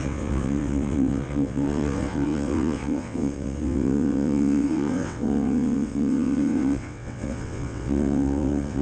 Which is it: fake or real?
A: fake